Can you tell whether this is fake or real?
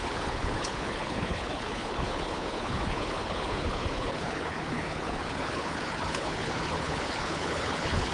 fake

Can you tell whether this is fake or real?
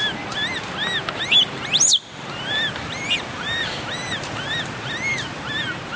real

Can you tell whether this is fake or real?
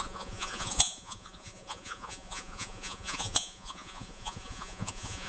fake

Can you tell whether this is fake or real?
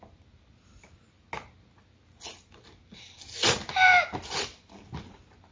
real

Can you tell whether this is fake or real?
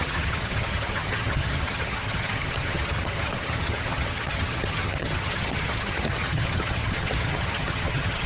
fake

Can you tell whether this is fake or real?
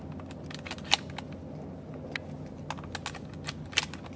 real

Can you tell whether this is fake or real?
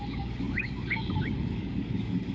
fake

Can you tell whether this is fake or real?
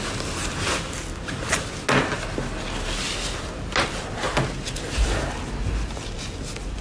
real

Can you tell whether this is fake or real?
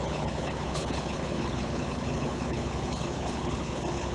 fake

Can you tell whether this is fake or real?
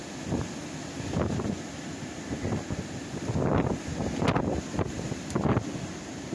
real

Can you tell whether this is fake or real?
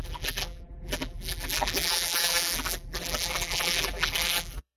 fake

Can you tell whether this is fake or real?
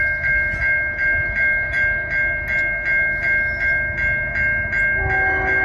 real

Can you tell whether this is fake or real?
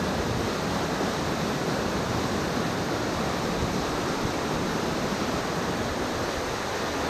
real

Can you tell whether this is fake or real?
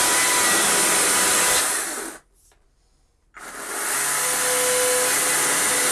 real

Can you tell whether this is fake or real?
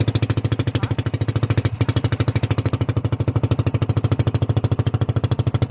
real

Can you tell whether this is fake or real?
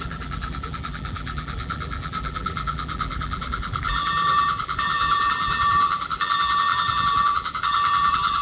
fake